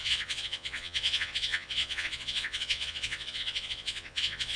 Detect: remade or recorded remade